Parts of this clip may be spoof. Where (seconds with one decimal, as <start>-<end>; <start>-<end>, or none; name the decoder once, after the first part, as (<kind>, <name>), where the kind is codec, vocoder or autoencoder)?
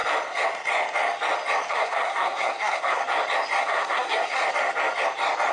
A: 1.7-3.0 (codec, SNAC); 3.6-4.4